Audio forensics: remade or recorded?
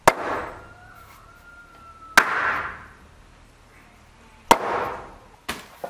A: recorded